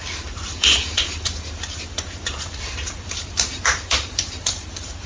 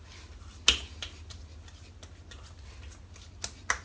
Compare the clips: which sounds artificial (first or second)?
first